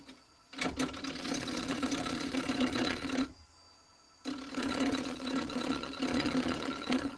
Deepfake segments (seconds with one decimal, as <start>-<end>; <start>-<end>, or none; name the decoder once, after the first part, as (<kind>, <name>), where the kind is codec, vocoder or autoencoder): 0.0-0.5 (vocoder, Vocos); 1.2-3.3; 4.5-7.2